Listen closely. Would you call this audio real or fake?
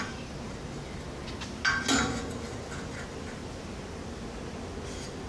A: real